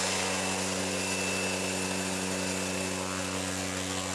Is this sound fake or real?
real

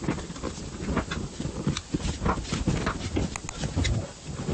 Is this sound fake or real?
real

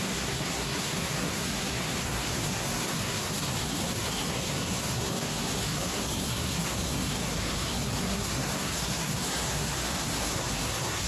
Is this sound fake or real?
fake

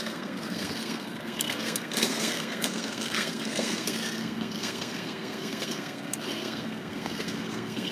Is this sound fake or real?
fake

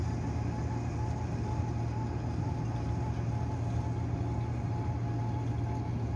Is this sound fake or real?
real